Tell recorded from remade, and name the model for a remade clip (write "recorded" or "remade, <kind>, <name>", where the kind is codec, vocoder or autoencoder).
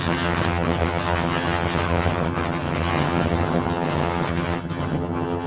remade, vocoder, HiFi-GAN